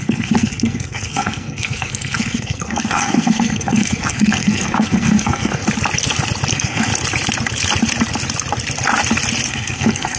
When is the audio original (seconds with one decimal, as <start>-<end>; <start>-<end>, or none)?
5.6-6.5; 6.9-9.5